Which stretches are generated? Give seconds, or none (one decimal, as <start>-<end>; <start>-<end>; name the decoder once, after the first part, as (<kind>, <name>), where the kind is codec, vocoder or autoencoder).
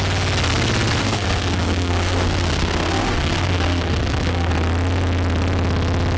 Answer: 1.0-4.5 (codec, SNAC)